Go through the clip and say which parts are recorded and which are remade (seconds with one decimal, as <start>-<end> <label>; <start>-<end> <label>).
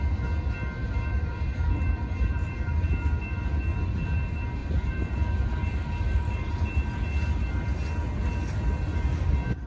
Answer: 0.0-0.8 recorded; 0.8-2.6 remade; 2.6-4.6 recorded; 4.6-6.5 remade; 6.5-9.7 recorded